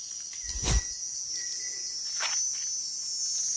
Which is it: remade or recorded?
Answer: recorded